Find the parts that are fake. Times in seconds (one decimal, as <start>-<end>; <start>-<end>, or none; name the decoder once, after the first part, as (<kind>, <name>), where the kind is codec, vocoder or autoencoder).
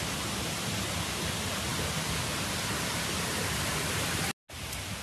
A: none